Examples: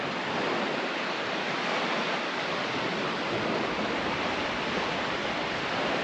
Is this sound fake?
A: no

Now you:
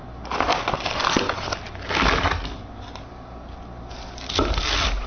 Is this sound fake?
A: no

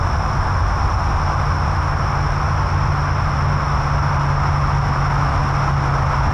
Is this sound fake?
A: no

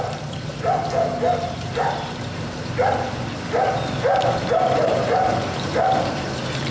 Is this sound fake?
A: yes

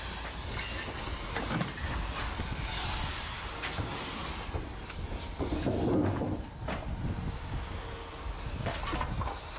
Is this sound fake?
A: no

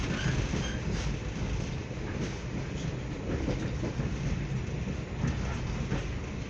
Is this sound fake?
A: no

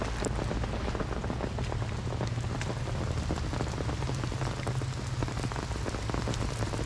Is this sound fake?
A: no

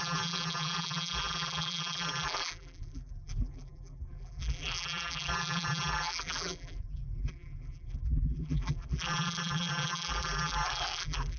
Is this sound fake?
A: yes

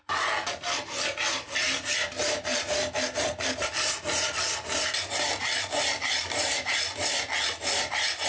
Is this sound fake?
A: no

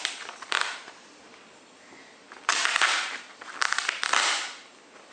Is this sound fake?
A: yes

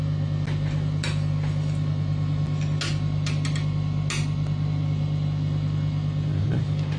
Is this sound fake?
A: no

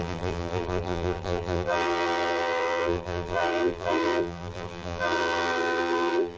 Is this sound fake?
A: yes